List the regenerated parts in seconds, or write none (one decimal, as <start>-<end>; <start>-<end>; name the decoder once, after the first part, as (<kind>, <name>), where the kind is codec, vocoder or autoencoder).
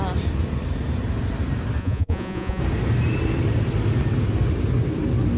1.8-2.6 (vocoder, Vocos)